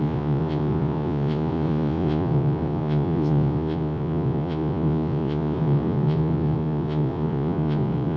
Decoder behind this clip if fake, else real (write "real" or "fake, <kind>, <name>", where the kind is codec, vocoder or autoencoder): fake, vocoder, Vocos